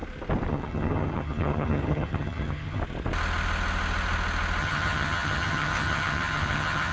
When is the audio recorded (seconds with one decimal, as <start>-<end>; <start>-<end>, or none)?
0.0-0.5; 2.8-4.6